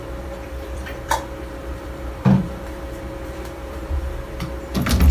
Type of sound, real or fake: fake